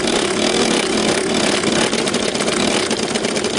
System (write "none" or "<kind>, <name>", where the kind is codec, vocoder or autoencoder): none